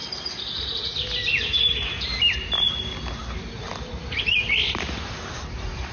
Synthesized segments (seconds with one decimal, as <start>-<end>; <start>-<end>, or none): none